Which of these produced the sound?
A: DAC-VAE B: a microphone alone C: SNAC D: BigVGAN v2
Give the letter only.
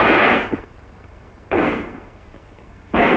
C